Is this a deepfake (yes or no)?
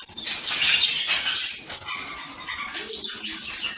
no